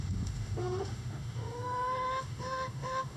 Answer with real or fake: fake